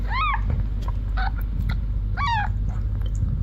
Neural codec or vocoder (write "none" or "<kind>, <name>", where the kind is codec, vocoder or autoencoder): none